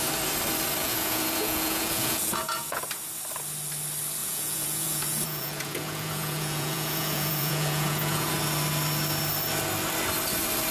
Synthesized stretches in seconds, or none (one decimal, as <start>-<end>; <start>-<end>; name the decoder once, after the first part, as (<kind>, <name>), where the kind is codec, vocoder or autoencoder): 0.8-2.8 (vocoder, Vocos); 4.2-8.3